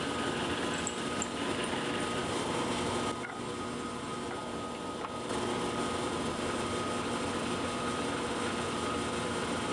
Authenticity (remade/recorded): recorded